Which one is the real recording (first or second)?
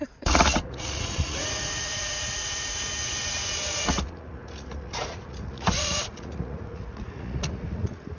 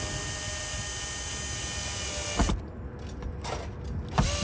second